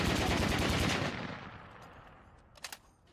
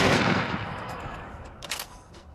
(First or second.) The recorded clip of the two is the first